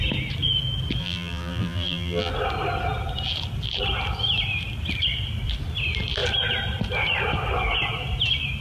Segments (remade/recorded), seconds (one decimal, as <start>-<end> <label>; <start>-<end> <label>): 0.0-1.0 recorded; 1.0-2.3 remade; 2.3-8.6 recorded